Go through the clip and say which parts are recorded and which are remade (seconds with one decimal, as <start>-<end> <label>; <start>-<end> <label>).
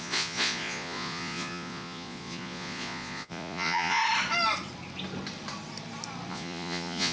0.0-4.0 remade; 4.0-6.3 recorded; 6.3-7.1 remade